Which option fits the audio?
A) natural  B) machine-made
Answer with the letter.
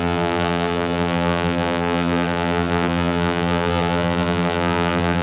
B